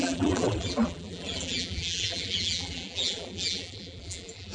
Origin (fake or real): fake